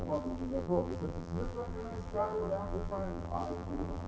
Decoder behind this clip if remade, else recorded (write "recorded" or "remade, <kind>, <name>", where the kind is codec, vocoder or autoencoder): remade, vocoder, BigVGAN v2